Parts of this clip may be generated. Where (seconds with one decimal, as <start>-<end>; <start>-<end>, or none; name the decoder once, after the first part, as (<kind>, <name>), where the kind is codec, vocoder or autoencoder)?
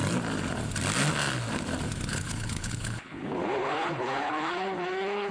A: 2.1-5.3 (codec, HILCodec)